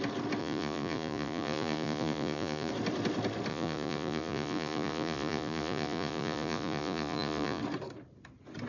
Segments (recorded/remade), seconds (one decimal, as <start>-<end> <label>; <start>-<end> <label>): 0.0-0.4 recorded; 0.4-2.7 remade; 2.7-3.5 recorded; 3.5-7.6 remade; 7.6-8.7 recorded

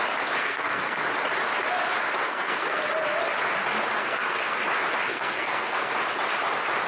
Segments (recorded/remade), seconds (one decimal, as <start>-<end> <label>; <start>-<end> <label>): 0.0-0.4 recorded; 0.4-1.0 remade; 1.0-2.2 recorded; 2.2-2.8 remade; 2.8-4.0 recorded; 4.0-4.6 remade; 4.6-5.1 recorded; 5.1-5.9 remade; 5.9-6.9 recorded

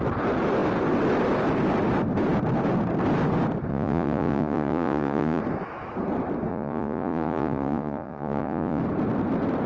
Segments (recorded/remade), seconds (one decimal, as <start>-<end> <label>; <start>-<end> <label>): 0.0-3.7 recorded; 3.7-5.4 remade; 5.4-6.5 recorded; 6.5-8.8 remade; 8.8-9.7 recorded

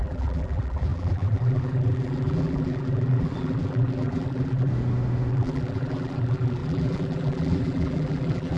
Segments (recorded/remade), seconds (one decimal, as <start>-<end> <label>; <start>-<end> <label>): 0.0-4.7 remade; 4.7-5.3 recorded; 5.3-8.6 remade